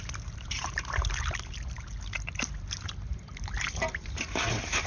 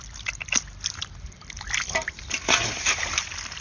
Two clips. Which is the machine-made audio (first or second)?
first